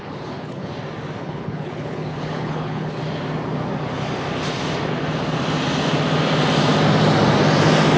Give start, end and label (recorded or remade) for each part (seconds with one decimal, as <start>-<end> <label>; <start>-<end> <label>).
0.0-0.7 remade; 0.7-1.2 recorded; 1.2-3.0 remade; 3.0-8.0 recorded